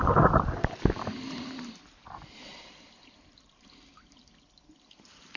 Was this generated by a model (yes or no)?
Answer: no